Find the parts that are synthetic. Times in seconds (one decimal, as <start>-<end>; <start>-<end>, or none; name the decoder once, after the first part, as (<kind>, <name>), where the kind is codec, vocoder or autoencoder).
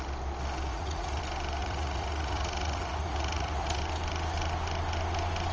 0.7-1.2 (vocoder, Vocos); 1.6-3.8